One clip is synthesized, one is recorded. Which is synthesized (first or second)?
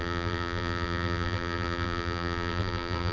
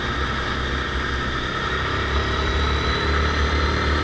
first